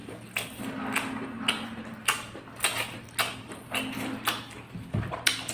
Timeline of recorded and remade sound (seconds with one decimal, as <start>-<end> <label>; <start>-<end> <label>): 0.0-5.5 recorded